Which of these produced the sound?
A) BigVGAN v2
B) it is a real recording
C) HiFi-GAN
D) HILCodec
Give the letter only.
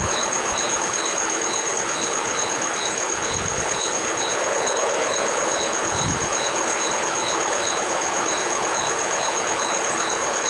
D